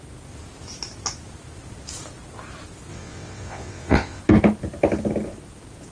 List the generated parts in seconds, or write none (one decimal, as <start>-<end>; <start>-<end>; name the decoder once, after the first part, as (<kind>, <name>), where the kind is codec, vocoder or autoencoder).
2.9-4.2 (vocoder, WaveNeXt)